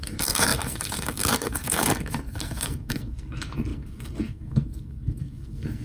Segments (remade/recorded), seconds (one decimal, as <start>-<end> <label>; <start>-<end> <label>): 0.0-5.8 remade